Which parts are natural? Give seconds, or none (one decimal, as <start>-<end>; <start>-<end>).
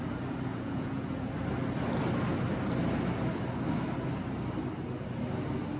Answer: 0.0-0.5; 1.3-5.8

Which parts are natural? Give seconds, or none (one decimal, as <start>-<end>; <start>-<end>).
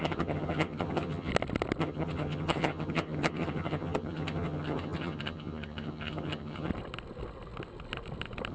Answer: 1.3-1.8; 6.7-8.5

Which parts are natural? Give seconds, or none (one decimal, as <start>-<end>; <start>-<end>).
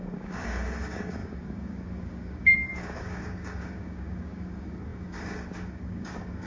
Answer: none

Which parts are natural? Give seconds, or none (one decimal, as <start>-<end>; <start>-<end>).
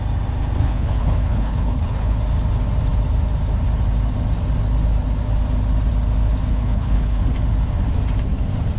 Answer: 0.0-0.6; 2.2-6.5; 7.2-8.8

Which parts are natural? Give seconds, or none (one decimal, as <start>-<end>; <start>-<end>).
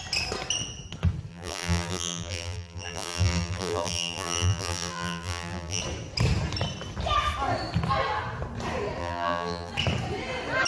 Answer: 0.0-1.3; 5.8-9.0; 9.7-10.7